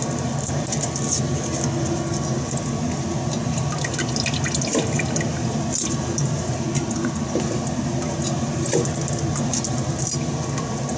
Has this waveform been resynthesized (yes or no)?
no